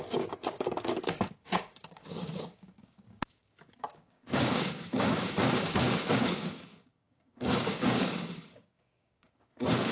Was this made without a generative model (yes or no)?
no